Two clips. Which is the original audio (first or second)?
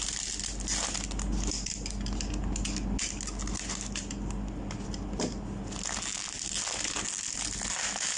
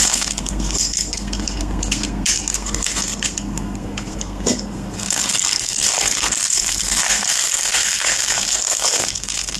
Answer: first